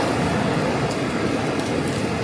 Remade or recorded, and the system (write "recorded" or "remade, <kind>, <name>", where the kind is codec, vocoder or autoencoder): recorded